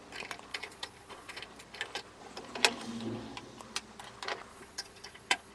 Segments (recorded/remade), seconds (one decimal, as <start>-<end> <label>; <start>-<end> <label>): 0.0-0.5 recorded; 0.5-1.4 remade; 1.4-4.5 recorded; 4.5-5.5 remade